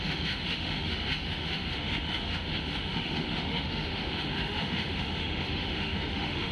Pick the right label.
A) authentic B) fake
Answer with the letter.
B